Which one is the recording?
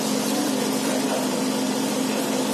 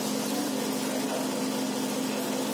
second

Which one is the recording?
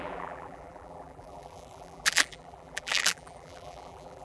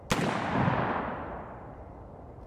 second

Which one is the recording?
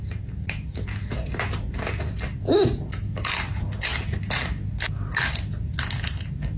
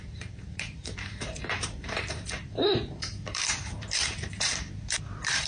first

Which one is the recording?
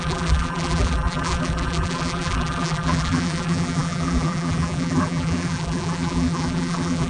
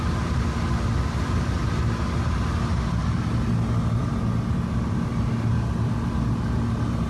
second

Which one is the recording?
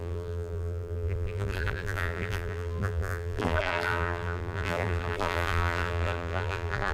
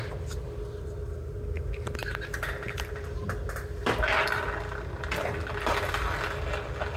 second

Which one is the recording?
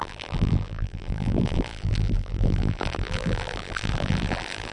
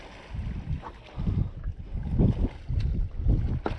second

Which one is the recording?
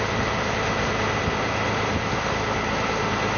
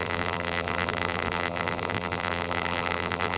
first